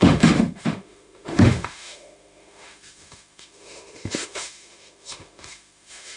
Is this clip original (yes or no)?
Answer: no